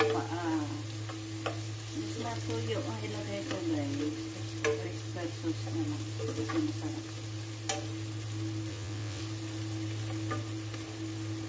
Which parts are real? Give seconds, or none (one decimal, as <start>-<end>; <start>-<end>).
0.0-8.7; 9.2-11.5